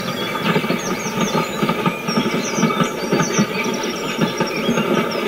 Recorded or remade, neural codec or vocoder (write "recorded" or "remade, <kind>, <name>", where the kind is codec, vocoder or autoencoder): recorded